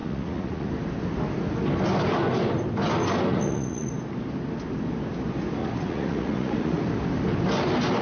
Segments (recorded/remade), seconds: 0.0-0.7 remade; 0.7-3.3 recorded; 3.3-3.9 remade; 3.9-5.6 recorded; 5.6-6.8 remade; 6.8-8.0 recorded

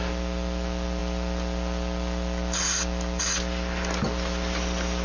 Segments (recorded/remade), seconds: 0.0-5.0 recorded